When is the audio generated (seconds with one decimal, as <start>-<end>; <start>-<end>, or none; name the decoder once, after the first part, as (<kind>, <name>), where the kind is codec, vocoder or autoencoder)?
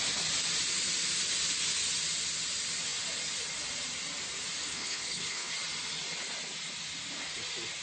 4.7-5.5 (codec, HILCodec)